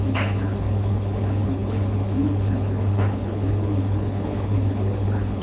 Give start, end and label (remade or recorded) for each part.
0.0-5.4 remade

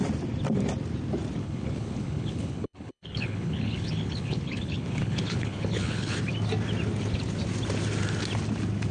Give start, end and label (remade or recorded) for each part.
0.0-1.4 recorded; 1.4-6.2 remade; 6.2-8.9 recorded

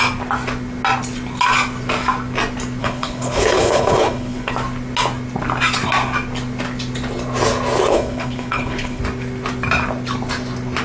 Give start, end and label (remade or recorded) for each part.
0.0-2.8 recorded; 2.8-4.5 remade; 4.5-7.9 recorded; 7.9-9.0 remade; 9.0-10.8 recorded

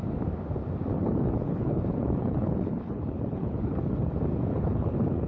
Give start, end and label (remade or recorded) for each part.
0.0-0.9 recorded; 0.9-4.1 remade; 4.1-4.5 recorded; 4.5-5.3 remade

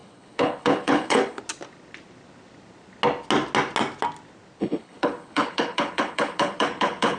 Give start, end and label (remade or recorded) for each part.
0.0-1.4 remade; 1.4-4.6 recorded; 4.6-7.2 remade

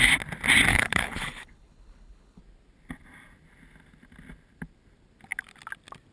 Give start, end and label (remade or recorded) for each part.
0.0-0.7 recorded; 0.7-2.4 remade; 2.4-6.1 recorded

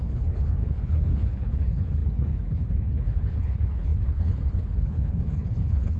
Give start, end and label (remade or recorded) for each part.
0.0-6.0 remade

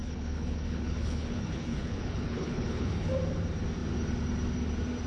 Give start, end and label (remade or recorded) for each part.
0.0-3.1 remade; 3.1-5.1 recorded